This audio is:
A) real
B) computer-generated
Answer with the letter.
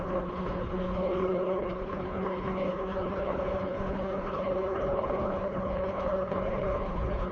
B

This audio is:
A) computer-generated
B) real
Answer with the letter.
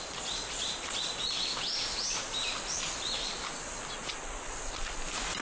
B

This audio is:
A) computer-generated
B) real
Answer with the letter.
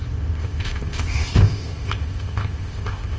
A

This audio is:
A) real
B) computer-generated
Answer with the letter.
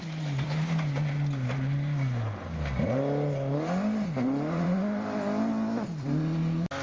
A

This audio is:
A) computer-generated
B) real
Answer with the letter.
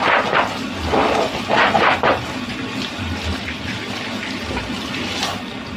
B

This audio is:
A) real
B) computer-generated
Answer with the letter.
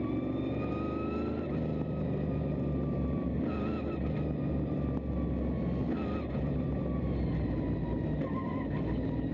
A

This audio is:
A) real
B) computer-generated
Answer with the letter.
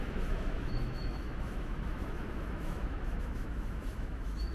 B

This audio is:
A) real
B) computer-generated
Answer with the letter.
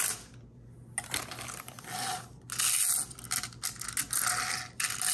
A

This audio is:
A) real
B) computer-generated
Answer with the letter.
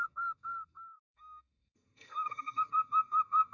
B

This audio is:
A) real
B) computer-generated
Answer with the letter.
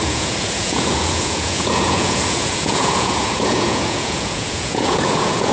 B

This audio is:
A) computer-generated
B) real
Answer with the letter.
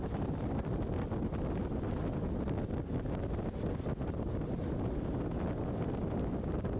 B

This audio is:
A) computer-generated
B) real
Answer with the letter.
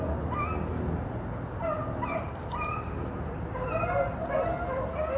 B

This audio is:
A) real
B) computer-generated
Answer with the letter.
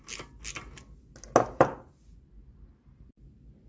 A